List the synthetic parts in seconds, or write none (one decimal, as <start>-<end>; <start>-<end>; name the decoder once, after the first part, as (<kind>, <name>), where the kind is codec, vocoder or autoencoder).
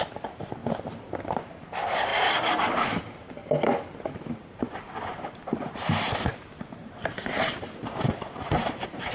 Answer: 0.0-0.6 (vocoder, BigVGAN v2); 1.2-3.4; 4.3-9.1